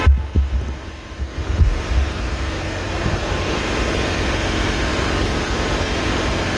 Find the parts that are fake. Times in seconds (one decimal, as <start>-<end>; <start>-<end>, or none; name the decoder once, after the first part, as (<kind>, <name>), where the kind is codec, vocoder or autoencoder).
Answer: 4.9-5.5 (codec, DAC)